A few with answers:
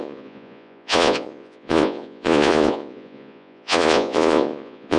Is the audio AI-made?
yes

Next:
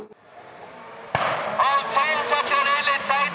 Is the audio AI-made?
no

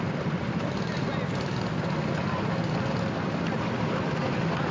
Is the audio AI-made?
no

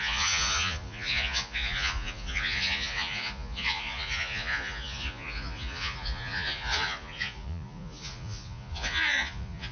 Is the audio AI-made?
yes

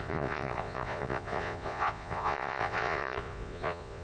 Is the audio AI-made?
yes